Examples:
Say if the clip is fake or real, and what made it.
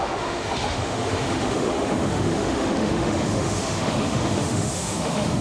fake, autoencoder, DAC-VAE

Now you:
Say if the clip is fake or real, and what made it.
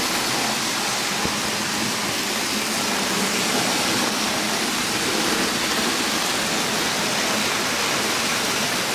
real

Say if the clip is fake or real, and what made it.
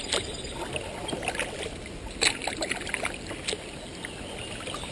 real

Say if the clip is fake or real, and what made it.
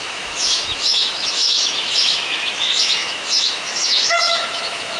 fake, autoencoder, DAC-VAE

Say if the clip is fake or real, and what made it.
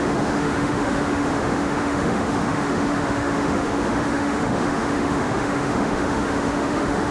fake, autoencoder, DAC-VAE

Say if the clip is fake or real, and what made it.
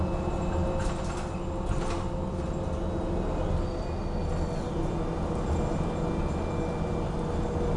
real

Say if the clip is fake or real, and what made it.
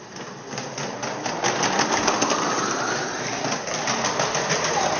real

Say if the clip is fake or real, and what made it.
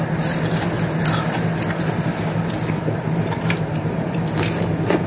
real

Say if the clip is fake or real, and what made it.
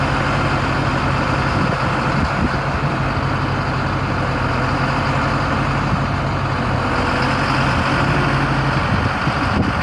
real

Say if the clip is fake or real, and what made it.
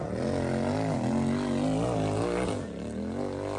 real